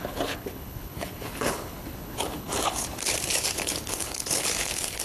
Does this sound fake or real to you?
fake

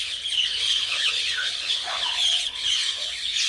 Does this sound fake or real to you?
fake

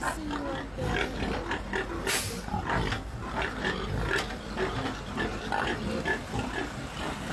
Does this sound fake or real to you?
real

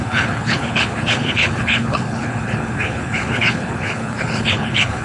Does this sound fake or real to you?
fake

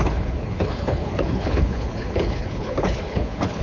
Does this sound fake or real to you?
fake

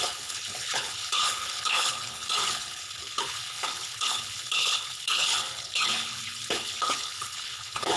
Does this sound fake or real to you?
fake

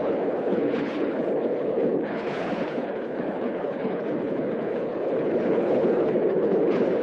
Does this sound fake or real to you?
fake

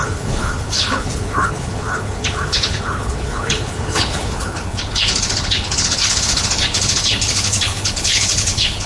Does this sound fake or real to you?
fake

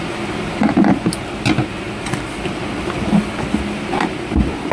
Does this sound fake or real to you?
real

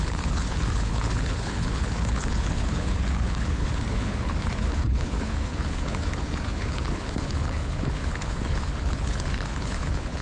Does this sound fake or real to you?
fake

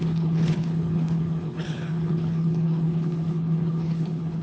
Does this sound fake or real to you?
fake